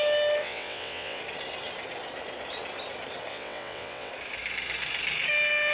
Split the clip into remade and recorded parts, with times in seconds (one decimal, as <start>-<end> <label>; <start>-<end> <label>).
0.0-0.4 recorded; 0.4-1.2 remade; 1.2-3.3 recorded; 3.3-4.1 remade; 4.1-5.7 recorded